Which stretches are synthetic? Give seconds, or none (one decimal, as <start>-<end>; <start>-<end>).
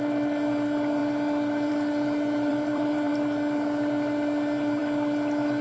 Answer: 2.5-3.1